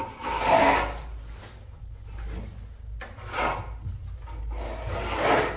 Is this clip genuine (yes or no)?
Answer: yes